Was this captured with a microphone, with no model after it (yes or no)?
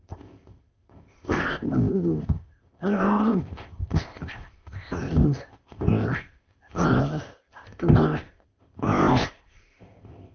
no